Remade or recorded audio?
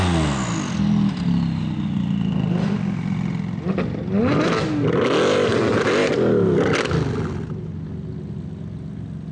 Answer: recorded